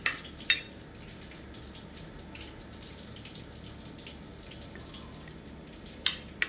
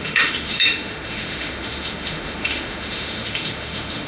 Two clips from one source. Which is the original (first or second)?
first